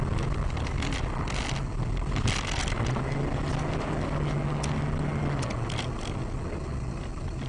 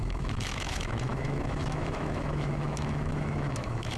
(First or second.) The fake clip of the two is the second